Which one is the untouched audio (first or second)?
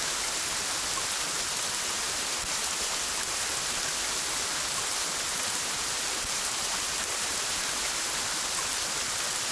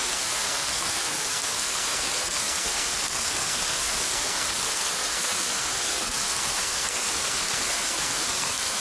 first